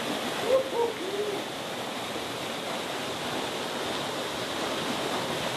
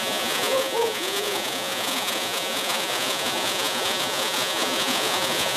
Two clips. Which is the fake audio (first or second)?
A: second